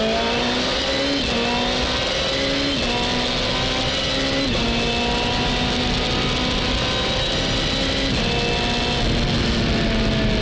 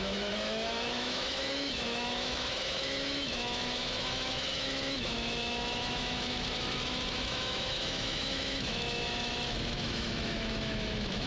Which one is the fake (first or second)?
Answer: second